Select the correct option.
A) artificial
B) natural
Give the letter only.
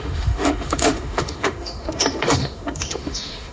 A